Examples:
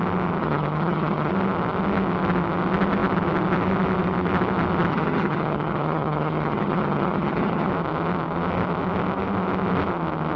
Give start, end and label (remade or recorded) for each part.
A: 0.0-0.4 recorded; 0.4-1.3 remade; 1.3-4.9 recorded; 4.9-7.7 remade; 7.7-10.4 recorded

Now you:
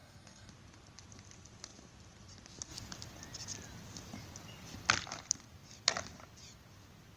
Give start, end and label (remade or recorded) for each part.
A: 0.0-0.5 remade; 0.5-7.2 recorded

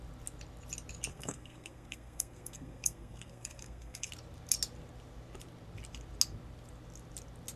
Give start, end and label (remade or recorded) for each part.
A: 0.0-1.1 recorded; 1.1-4.1 remade; 4.1-7.6 recorded

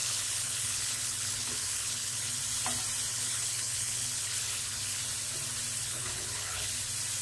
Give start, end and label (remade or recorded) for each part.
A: 0.0-2.4 remade; 2.4-3.1 recorded; 3.1-5.0 remade; 5.0-5.8 recorded; 5.8-6.7 remade; 6.7-7.2 recorded

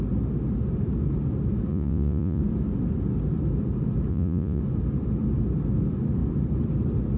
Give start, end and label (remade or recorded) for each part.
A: 0.0-1.7 recorded; 1.7-2.4 remade; 2.4-4.1 recorded; 4.1-4.6 remade; 4.6-7.2 recorded